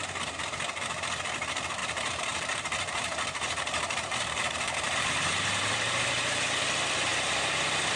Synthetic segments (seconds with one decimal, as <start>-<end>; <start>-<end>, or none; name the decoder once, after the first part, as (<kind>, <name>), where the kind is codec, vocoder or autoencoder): 1.8-6.6 (vocoder, BigVGAN v2); 7.1-8.0

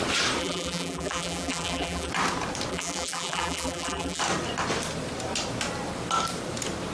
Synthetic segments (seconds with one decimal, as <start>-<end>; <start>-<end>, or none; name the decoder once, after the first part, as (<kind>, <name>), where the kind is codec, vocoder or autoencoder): 0.4-2.1 (vocoder, BigVGAN v2); 2.7-4.2

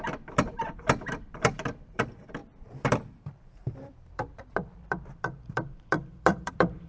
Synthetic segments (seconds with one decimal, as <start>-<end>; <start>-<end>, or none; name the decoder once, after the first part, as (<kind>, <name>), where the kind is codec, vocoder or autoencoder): 0.0-6.9 (vocoder, BigVGAN v2)

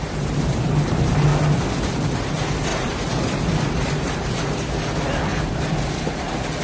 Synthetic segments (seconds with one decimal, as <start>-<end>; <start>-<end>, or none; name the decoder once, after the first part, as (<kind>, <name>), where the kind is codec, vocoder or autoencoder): 0.0-1.3 (vocoder, BigVGAN v2); 1.8-5.3